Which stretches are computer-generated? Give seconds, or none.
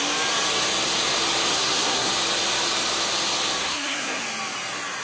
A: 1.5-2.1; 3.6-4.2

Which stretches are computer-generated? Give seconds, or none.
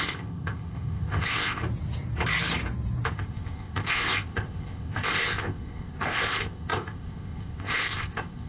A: 0.0-1.6; 3.1-8.5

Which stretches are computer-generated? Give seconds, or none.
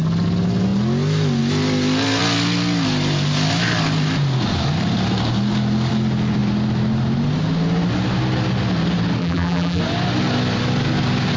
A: 9.2-9.8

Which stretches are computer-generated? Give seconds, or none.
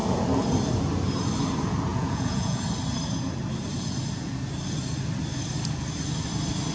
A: 1.9-2.6